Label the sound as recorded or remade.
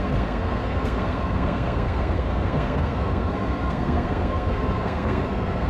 remade